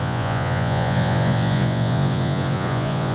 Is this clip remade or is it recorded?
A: remade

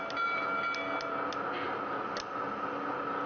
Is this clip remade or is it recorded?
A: recorded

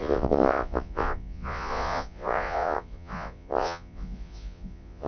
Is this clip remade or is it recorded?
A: remade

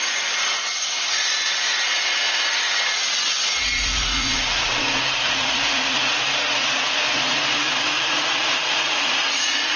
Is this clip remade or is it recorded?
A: remade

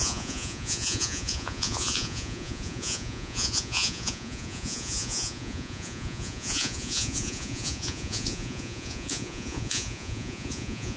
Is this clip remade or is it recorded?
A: remade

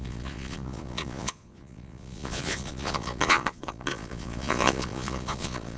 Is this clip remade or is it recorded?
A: remade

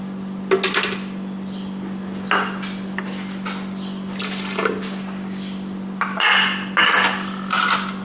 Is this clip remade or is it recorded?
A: recorded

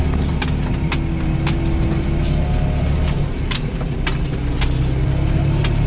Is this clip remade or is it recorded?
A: recorded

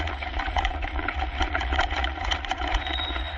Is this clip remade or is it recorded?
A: remade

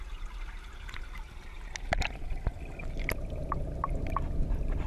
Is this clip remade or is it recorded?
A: recorded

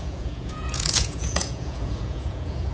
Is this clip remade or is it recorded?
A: remade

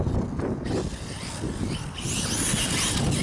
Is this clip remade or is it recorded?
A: recorded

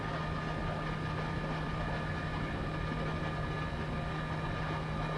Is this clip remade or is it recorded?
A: recorded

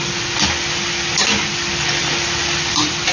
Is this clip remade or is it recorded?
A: recorded